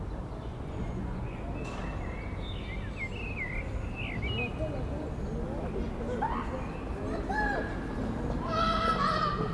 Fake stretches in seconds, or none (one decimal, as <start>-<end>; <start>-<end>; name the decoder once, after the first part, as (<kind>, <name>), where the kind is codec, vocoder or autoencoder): 0.5-1.4 (vocoder, Vocos)